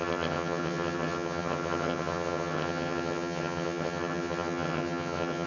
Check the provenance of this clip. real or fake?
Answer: fake